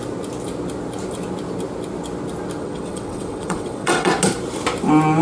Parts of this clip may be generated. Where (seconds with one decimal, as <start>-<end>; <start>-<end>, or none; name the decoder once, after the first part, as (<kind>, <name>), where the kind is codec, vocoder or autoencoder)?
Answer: 2.6-4.1 (vocoder, WaveNeXt)